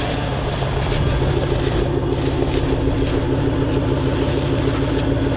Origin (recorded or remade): recorded